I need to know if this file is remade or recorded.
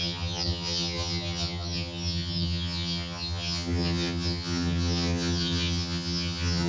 remade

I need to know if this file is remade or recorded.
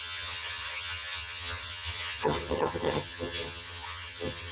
remade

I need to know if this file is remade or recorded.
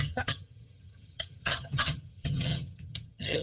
remade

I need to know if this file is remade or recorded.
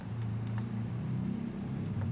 recorded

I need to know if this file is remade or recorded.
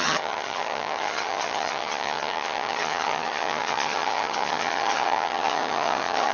remade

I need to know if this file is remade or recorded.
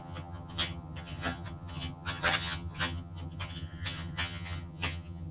remade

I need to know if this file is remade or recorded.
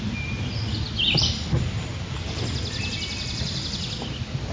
recorded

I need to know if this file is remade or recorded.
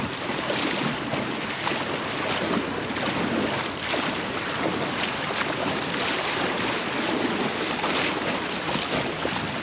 recorded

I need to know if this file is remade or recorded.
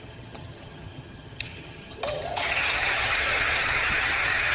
remade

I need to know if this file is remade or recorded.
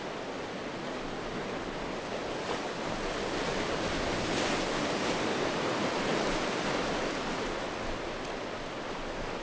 recorded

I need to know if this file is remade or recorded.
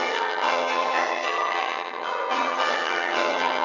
remade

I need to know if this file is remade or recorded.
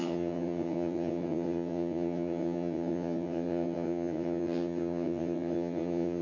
remade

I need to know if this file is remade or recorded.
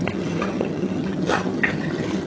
remade